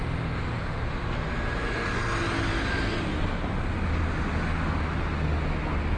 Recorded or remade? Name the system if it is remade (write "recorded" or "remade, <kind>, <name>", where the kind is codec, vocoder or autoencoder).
recorded